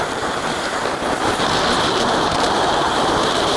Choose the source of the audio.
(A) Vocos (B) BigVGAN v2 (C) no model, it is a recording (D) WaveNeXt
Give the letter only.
B